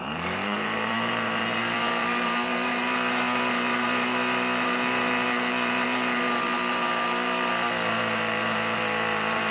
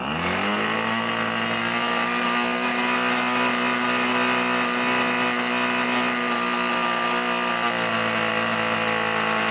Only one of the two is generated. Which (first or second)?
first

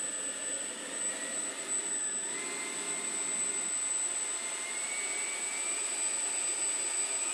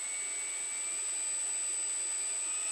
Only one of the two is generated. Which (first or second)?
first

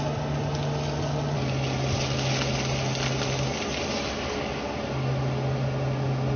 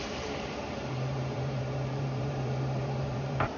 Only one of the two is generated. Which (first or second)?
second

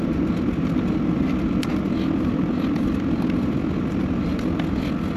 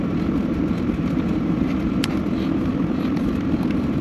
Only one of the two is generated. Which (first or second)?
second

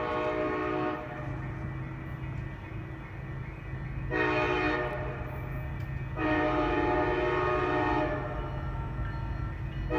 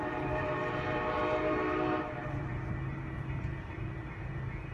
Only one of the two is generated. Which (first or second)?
second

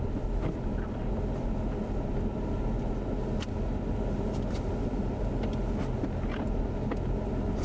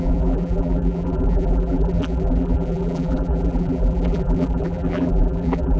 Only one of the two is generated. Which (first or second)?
second